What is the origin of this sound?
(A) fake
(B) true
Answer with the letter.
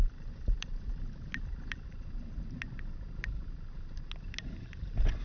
B